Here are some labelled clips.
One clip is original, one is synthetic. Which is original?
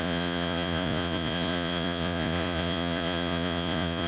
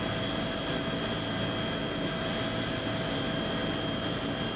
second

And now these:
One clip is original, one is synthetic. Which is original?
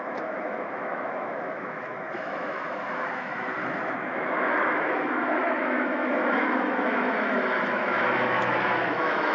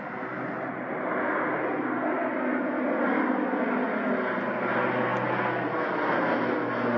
second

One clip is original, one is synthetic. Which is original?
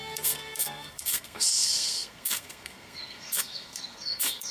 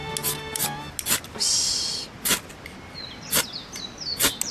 second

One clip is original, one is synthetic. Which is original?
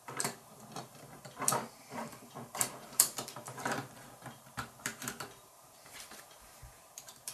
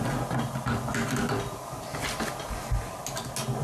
second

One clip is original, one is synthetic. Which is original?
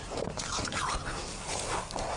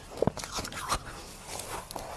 second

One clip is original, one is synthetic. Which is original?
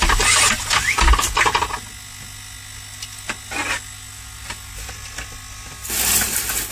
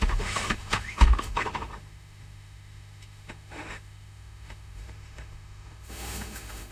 first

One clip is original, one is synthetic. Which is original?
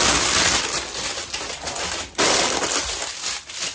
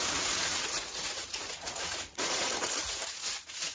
first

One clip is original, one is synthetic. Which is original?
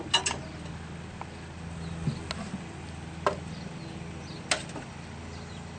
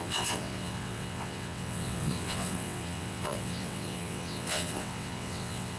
first